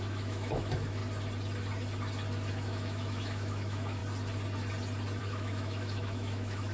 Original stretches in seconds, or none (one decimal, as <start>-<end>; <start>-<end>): 1.0-2.5; 4.0-5.2